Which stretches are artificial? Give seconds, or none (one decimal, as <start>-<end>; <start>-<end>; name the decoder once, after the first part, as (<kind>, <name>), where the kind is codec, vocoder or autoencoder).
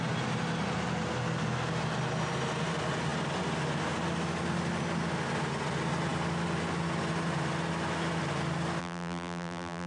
8.8-9.9 (vocoder, BigVGAN v2)